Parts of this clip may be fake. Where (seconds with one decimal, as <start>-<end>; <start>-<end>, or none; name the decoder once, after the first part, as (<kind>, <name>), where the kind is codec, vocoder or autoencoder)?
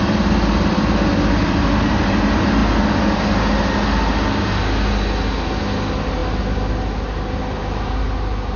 none